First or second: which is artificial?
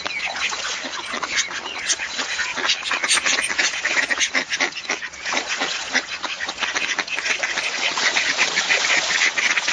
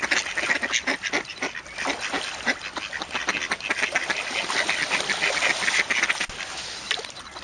first